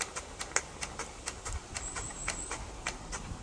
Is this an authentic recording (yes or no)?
yes